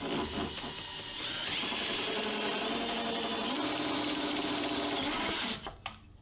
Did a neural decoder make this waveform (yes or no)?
no